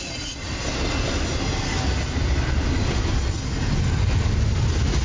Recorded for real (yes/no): yes